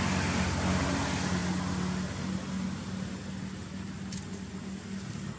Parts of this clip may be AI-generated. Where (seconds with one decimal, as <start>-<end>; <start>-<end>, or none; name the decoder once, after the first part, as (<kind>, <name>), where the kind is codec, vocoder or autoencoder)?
none